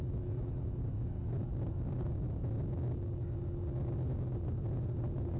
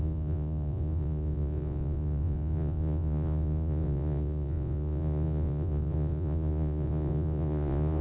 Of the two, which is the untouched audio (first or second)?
first